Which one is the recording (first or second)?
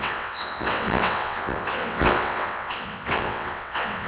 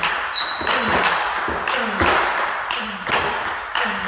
second